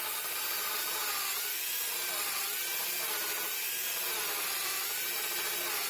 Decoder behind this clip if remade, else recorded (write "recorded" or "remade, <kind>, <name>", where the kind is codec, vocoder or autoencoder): recorded